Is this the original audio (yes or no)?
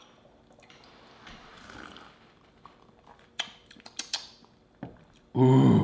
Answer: no